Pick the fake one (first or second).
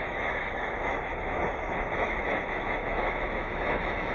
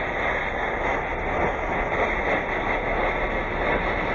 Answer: first